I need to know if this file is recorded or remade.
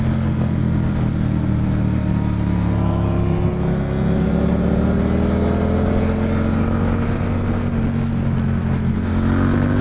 recorded